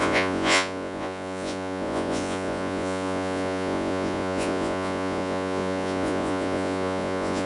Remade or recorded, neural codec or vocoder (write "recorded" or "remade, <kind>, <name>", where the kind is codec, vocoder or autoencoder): remade, vocoder, Vocos